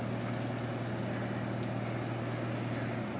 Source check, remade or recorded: recorded